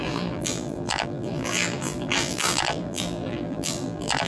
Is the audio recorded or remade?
remade